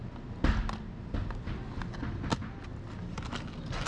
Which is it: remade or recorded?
recorded